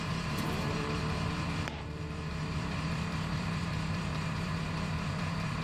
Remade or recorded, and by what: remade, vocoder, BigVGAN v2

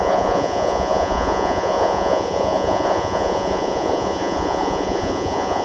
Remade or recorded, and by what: remade, vocoder, Vocos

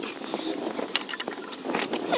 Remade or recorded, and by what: recorded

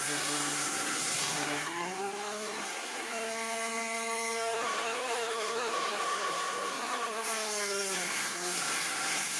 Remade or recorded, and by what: remade, codec, SNAC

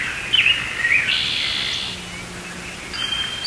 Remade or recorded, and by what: recorded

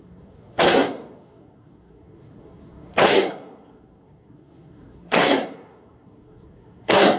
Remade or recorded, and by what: remade, codec, SNAC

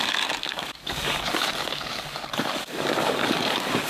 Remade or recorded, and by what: remade, codec, DAC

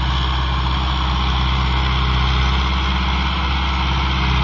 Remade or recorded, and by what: recorded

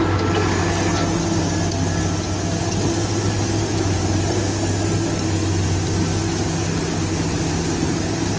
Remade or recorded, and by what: recorded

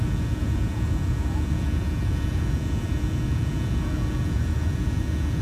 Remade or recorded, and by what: remade, vocoder, Vocos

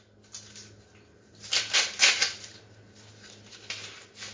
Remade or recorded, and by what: recorded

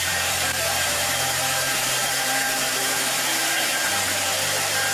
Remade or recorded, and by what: remade, vocoder, BigVGAN v2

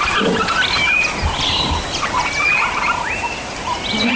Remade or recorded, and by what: recorded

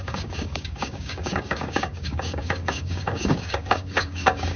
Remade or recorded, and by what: remade, codec, DAC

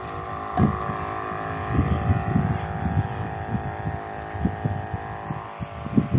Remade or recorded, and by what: recorded